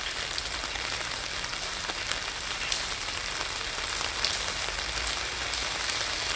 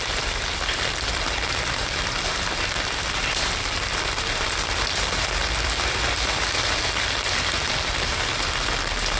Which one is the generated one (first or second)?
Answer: second